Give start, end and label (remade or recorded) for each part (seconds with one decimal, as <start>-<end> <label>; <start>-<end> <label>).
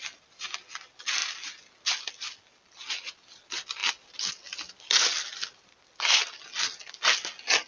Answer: 0.0-7.7 recorded